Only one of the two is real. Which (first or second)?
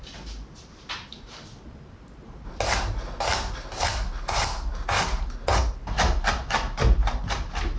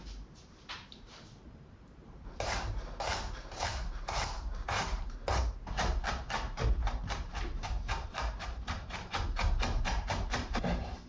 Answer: first